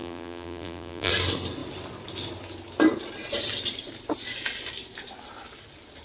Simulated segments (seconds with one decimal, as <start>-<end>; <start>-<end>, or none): 0.0-1.1